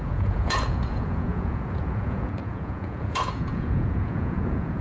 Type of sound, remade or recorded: remade